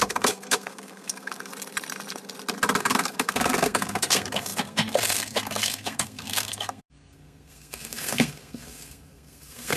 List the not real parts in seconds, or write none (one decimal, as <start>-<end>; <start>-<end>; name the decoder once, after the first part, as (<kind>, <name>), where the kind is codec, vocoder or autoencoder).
0.0-1.5 (codec, SNAC); 2.8-9.8